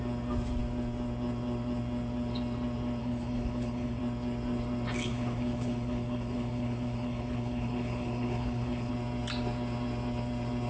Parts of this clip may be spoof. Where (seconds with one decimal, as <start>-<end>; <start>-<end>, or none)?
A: 3.0-4.0; 5.1-8.9